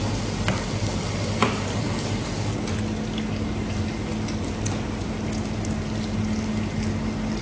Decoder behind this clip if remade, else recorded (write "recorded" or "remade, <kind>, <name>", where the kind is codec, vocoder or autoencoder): recorded